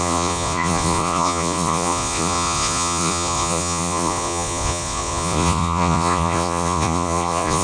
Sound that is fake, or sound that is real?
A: fake